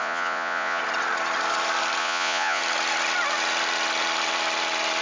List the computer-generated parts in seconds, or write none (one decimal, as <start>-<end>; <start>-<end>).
0.0-0.8; 2.0-2.6